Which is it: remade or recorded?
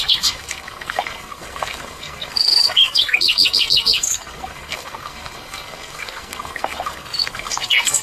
remade